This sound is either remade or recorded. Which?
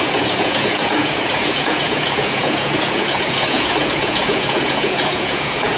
remade